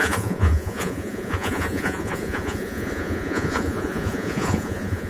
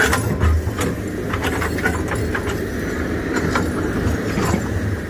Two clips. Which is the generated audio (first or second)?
first